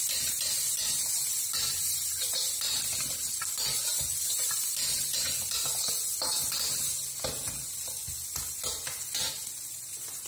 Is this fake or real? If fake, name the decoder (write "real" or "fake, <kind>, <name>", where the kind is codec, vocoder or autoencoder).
real